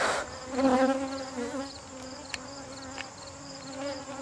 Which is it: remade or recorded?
recorded